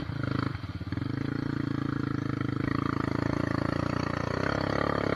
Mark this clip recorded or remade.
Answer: recorded